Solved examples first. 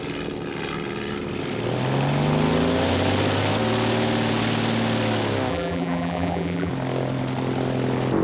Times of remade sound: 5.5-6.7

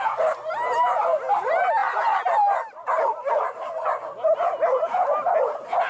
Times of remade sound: none

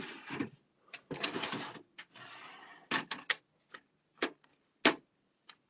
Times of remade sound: none